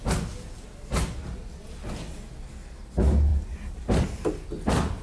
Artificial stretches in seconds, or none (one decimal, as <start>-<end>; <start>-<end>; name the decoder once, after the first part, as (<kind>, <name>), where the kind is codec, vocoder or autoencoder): 3.3-5.0 (vocoder, BigVGAN v2)